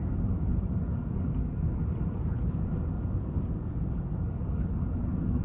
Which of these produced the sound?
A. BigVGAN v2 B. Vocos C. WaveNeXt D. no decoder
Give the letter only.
D